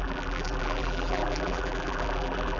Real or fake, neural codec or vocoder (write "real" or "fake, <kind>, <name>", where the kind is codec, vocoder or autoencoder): fake, vocoder, BigVGAN v2